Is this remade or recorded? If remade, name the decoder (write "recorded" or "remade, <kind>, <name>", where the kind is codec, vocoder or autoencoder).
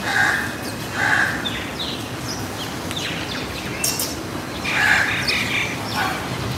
recorded